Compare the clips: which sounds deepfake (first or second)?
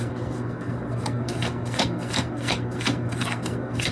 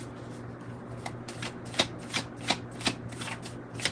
first